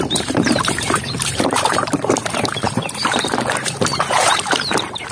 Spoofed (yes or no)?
yes